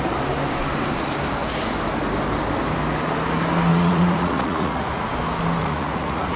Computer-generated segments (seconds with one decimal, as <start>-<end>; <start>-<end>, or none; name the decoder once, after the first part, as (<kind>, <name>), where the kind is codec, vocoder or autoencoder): 3.7-5.1 (vocoder, Vocos); 5.6-6.4